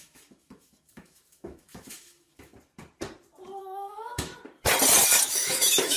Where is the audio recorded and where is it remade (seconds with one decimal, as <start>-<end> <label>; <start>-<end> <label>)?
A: 0.0-2.5 remade; 2.5-3.6 recorded; 3.6-4.3 remade; 4.3-5.2 recorded; 5.2-6.0 remade